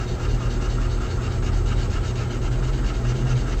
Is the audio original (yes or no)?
yes